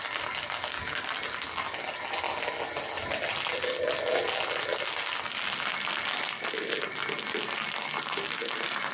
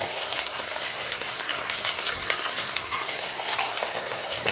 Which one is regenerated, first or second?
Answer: second